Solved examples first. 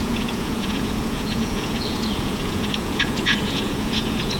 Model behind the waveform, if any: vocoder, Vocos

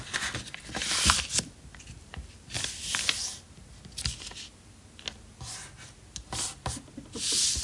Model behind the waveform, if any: none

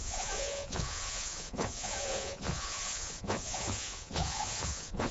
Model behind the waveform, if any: vocoder, Vocos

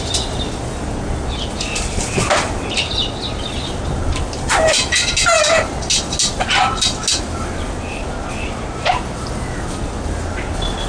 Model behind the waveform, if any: none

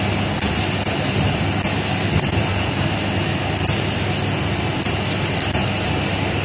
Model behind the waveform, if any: none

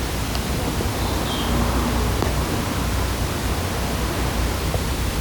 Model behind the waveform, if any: none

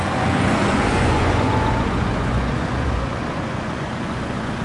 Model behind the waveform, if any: vocoder, Vocos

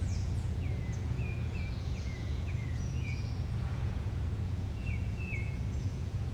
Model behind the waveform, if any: vocoder, Vocos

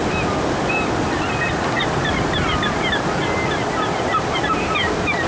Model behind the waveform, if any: none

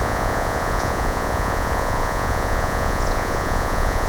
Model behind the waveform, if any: vocoder, Vocos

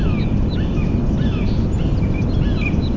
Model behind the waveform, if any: none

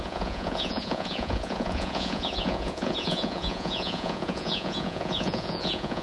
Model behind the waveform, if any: vocoder, Vocos